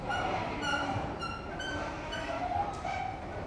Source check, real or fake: fake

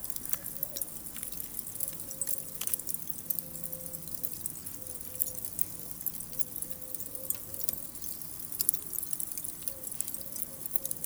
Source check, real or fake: real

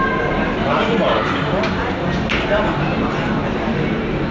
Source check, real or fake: fake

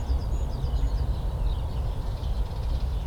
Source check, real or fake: real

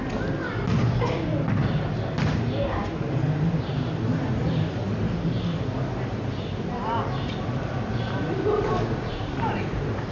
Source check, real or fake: real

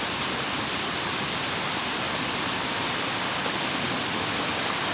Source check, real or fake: real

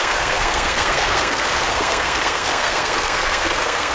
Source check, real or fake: fake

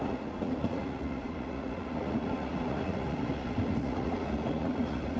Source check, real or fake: fake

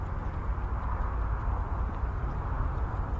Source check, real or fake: real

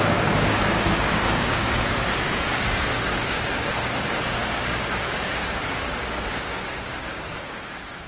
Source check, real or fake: fake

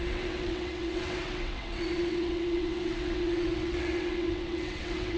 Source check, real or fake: fake